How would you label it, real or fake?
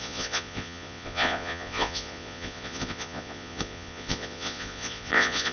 fake